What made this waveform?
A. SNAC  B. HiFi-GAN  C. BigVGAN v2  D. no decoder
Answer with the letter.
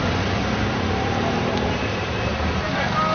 D